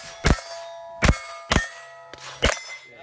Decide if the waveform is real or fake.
real